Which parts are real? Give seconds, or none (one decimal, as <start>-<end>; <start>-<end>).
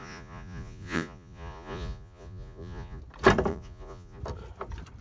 3.0-3.5; 4.2-5.0